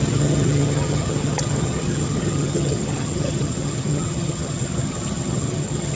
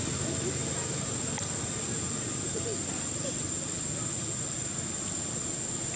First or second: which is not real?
first